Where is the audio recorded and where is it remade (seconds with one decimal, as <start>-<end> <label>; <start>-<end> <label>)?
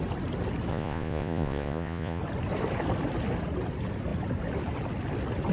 0.0-0.7 recorded; 0.7-2.2 remade; 2.2-5.5 recorded